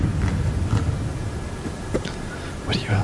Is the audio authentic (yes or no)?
yes